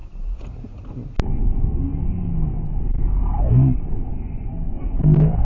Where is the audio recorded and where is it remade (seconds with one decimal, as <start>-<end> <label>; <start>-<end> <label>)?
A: 0.0-5.4 recorded